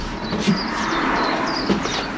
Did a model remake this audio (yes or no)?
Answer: no